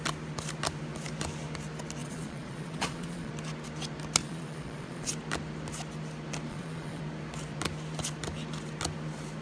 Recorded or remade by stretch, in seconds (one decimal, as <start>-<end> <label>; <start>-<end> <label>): 0.0-2.0 recorded; 2.0-3.3 remade; 3.3-4.2 recorded; 4.2-5.1 remade; 5.1-6.5 recorded; 6.5-7.0 remade; 7.0-9.4 recorded